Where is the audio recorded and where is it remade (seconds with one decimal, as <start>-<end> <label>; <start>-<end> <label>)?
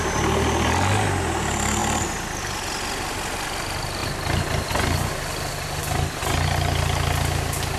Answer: 0.0-7.8 recorded